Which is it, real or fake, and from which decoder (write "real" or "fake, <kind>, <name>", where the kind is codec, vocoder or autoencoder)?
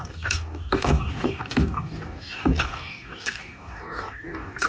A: fake, codec, DAC